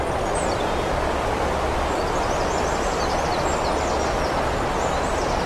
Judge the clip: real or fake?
real